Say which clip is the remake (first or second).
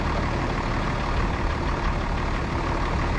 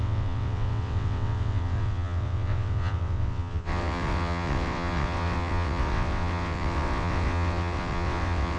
second